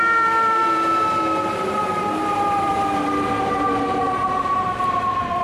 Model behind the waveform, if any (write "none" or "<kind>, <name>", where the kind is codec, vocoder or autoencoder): vocoder, BigVGAN v2